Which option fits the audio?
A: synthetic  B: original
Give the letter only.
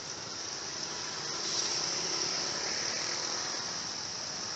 B